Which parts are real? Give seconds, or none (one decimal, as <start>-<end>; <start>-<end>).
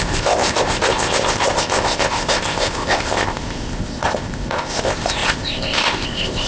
none